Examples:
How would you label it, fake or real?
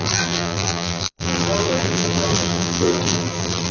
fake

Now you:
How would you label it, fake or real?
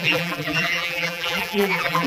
fake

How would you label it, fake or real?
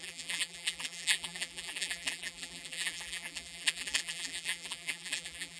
fake